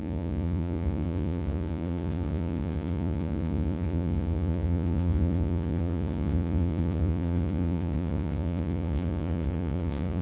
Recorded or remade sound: remade